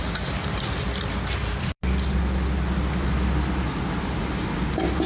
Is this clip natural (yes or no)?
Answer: yes